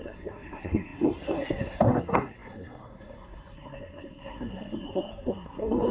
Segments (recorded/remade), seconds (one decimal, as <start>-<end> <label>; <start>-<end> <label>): 0.0-5.9 remade